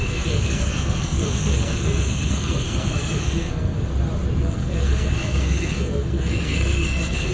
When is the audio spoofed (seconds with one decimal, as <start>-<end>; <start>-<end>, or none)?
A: 0.0-3.9; 4.4-7.3